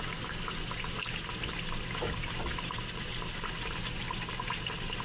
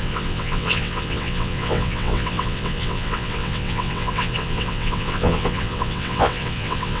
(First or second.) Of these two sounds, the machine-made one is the second